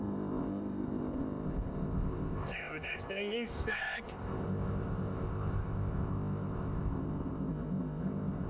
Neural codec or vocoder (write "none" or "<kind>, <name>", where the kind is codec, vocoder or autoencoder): codec, ZipCodec